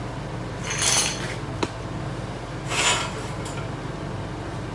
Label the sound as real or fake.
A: real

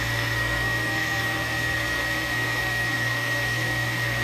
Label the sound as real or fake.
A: fake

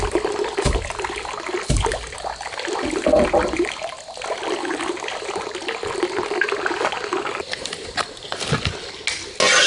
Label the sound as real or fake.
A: real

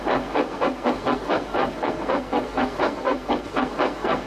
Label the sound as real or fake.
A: fake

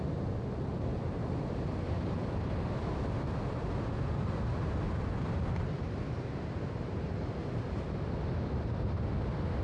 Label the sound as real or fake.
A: real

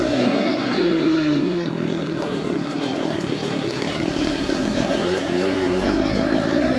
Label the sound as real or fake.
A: fake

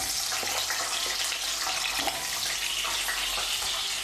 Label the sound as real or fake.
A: real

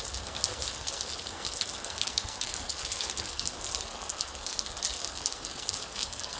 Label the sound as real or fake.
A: fake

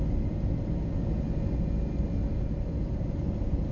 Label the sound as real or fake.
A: real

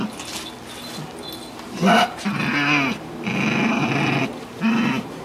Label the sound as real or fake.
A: real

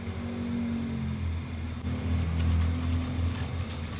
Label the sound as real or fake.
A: real